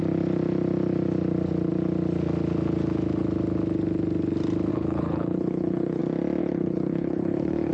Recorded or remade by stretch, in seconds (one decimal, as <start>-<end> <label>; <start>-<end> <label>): 0.0-4.7 recorded; 4.7-6.0 remade; 6.0-6.4 recorded; 6.4-7.7 remade